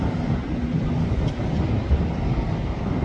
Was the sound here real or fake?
real